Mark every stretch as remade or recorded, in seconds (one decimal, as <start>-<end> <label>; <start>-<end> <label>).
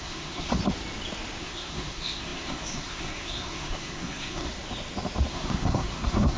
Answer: 0.0-0.6 remade; 0.6-1.4 recorded; 1.4-4.5 remade; 4.5-5.3 recorded; 5.3-6.4 remade